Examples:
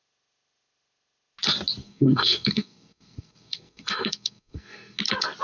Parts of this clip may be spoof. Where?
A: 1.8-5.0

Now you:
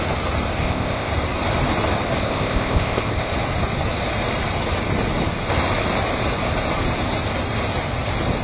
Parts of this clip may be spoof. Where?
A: 0.6-1.1; 2.2-3.3

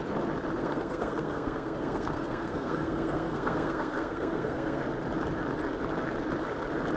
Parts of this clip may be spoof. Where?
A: 0.6-4.8

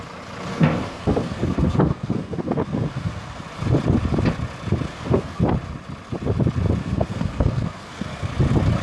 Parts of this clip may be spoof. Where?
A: 0.5-3.4; 4.9-5.4; 6.8-8.3

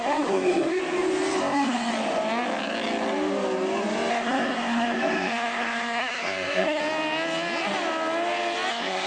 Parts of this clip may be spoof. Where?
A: 0.0-0.8; 1.4-1.9; 4.1-6.8; 8.7-9.1

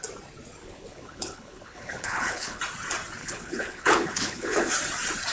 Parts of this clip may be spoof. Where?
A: 0.6-2.6; 3.2-4.7